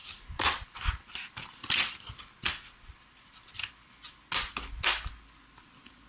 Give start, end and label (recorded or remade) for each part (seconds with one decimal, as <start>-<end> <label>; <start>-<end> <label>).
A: 0.0-6.1 recorded